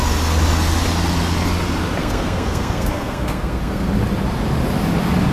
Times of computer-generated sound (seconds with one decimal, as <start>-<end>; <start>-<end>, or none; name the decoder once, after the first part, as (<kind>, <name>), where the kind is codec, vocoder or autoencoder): 2.0-3.9 (codec, SNAC)